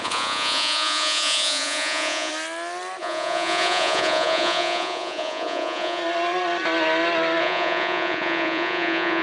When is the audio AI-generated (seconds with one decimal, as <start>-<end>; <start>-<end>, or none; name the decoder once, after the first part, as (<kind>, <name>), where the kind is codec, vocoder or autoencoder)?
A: 0.0-2.3 (vocoder, Vocos); 3.0-6.0; 7.4-9.2